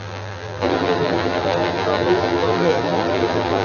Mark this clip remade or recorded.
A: remade